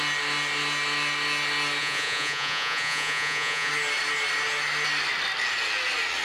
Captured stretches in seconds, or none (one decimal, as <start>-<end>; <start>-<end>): 0.0-1.8; 3.7-6.2